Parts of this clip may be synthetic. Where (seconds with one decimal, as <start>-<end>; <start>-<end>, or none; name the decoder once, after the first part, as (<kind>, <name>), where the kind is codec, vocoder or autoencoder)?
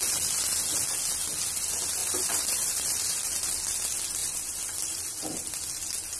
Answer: 2.0-3.1 (vocoder, BigVGAN v2); 4.2-5.5